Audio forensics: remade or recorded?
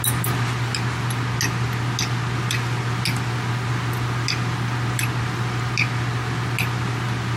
recorded